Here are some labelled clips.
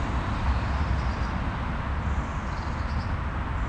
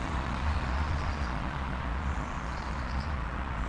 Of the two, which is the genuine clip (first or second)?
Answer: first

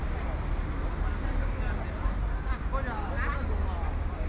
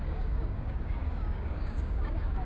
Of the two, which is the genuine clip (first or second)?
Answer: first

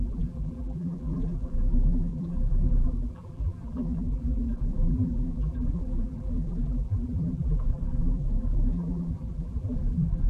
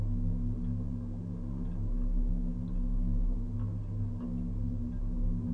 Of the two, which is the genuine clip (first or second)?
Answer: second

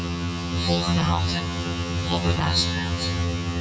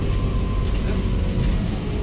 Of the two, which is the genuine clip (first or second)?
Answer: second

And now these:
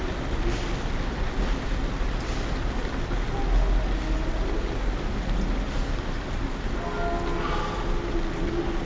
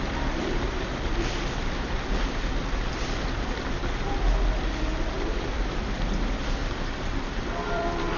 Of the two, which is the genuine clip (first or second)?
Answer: first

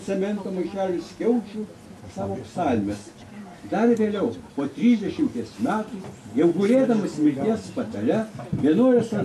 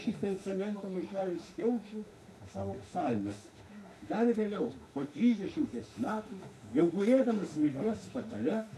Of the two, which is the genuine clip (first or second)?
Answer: first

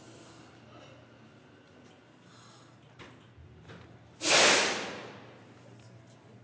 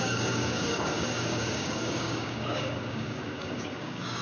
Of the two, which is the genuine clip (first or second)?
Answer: first